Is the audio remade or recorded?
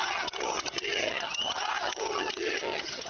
remade